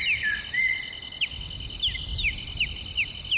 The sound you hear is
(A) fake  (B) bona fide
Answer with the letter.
B